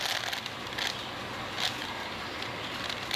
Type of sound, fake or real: real